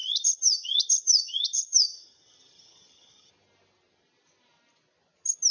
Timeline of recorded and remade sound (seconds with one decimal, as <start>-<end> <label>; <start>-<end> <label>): 0.0-3.3 remade; 3.3-5.5 recorded